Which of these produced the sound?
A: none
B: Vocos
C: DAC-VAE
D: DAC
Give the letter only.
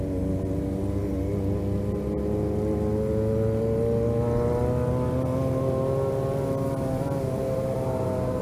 A